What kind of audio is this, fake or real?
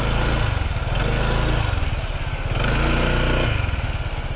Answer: real